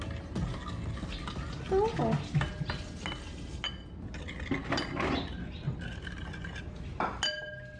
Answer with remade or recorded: recorded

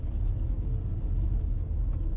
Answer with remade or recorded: recorded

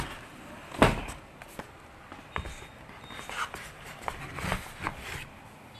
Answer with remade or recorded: recorded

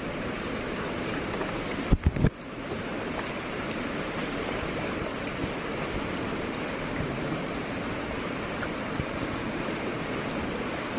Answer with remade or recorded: recorded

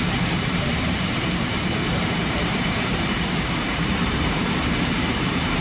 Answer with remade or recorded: remade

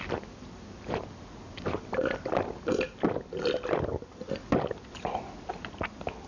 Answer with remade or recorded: recorded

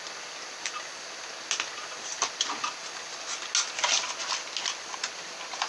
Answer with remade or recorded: recorded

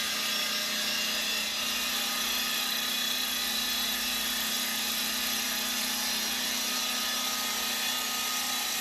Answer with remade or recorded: recorded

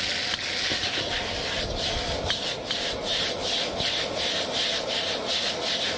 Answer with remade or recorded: recorded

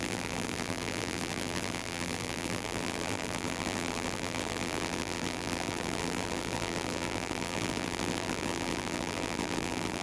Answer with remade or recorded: remade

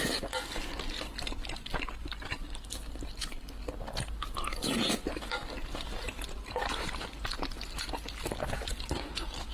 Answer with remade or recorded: recorded